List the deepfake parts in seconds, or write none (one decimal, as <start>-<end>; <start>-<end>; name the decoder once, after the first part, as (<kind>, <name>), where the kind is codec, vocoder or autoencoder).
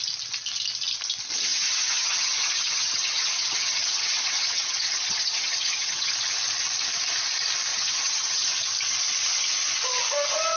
1.5-6.1 (vocoder, HiFi-GAN); 7.7-8.5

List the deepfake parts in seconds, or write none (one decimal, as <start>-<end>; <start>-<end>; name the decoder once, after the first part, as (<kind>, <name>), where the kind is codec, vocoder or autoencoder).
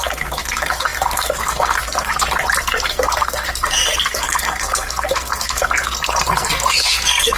0.0-2.1 (codec, SNAC); 2.6-7.4